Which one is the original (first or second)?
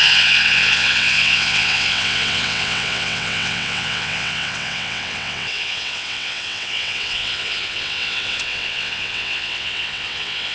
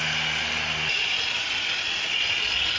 second